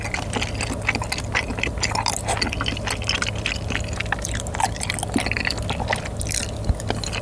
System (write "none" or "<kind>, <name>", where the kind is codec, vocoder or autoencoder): none